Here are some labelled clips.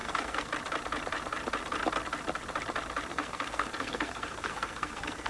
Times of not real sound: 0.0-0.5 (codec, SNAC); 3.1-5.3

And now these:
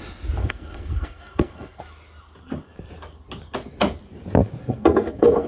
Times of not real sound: 0.4-1.8 (codec, SNAC); 4.6-5.5

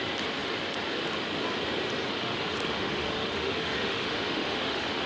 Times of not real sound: 2.2-5.1 (autoencoder, DAC-VAE)

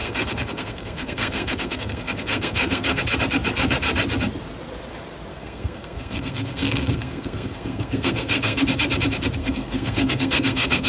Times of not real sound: 0.0-3.0 (codec, SNAC); 5.3-8.6; 9.4-10.9

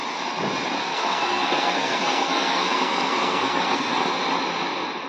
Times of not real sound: 0.8-3.9 (codec, SNAC)